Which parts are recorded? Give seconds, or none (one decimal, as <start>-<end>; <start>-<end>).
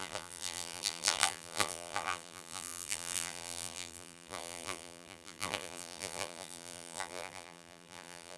none